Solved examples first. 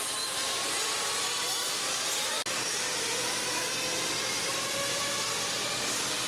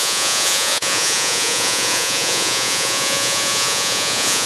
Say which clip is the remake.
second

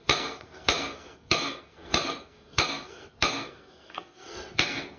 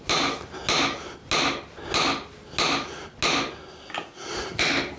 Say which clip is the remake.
first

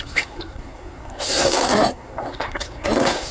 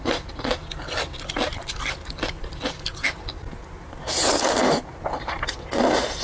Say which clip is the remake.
first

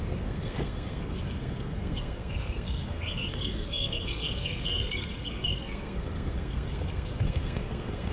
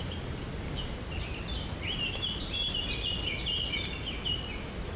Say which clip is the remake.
first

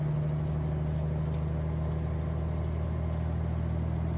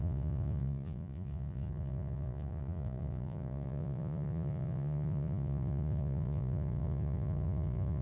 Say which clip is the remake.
second